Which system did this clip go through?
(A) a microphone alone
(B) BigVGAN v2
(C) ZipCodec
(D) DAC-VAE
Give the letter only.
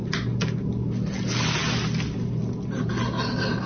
A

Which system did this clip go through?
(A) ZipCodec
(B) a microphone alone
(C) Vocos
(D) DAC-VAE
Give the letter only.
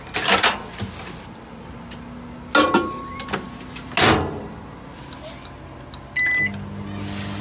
B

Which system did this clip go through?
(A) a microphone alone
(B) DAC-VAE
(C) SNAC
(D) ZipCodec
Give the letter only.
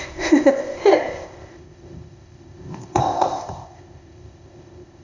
D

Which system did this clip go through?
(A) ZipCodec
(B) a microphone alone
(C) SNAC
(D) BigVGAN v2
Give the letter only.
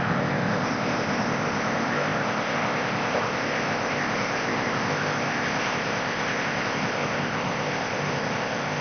A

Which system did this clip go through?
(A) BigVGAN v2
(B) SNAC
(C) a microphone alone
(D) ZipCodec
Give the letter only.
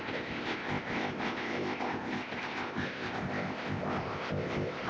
D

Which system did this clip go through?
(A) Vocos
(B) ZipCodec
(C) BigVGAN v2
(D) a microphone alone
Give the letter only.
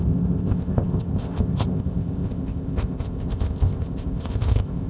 B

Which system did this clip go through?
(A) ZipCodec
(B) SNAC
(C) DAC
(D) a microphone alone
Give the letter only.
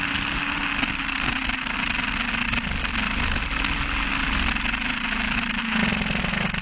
D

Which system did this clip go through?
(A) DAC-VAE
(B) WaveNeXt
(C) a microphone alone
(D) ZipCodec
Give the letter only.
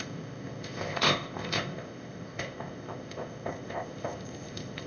D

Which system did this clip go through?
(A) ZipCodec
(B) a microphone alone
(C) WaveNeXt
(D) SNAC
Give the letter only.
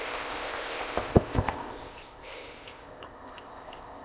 A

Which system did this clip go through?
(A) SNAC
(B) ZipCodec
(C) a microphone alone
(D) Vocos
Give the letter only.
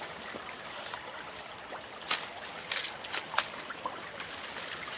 C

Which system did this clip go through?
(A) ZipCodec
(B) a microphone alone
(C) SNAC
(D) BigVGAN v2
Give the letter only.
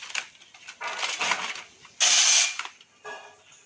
B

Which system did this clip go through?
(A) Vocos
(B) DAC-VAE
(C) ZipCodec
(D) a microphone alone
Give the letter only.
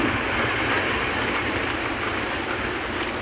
D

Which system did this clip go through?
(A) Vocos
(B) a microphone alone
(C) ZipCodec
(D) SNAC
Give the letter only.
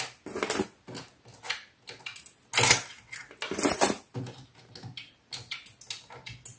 B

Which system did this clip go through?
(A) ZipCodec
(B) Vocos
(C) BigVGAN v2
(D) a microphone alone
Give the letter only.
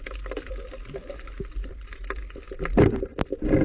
D